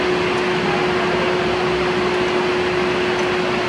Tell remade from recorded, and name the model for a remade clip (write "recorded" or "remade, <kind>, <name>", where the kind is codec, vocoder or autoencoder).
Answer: recorded